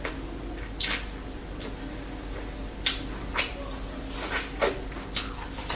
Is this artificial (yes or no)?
no